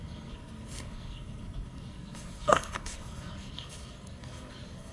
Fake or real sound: fake